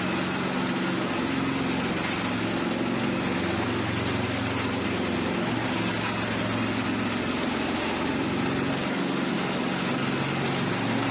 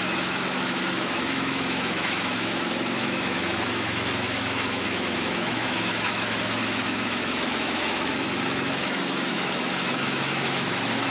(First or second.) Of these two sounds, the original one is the first